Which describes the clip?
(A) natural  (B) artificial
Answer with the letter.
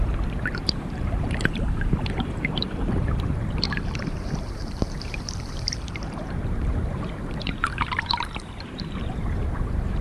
B